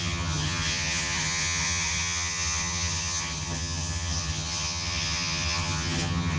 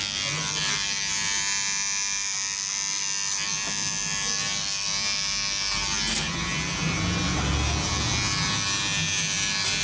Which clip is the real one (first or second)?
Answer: second